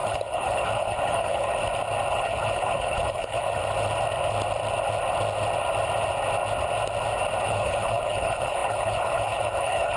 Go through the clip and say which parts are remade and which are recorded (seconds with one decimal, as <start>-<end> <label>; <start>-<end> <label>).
0.0-1.6 remade; 1.6-2.1 recorded; 2.1-3.6 remade; 3.6-7.4 recorded; 7.4-10.0 remade